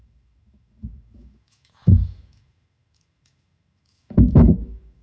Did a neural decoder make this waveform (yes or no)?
yes